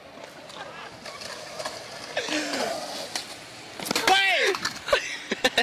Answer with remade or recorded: recorded